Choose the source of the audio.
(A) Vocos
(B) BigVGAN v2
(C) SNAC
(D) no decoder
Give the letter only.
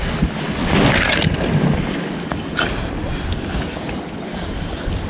D